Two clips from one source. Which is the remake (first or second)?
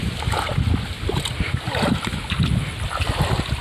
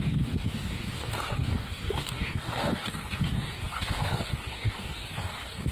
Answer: second